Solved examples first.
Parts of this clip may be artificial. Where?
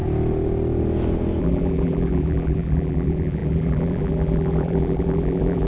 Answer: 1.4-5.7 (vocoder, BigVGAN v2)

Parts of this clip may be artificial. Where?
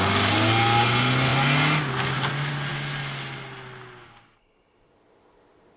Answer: none